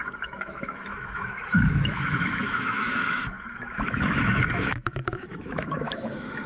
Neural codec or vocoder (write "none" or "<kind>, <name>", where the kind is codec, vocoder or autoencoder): autoencoder, DAC-VAE